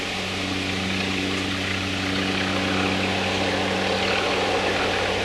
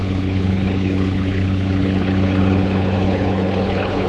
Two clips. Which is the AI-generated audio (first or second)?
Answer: second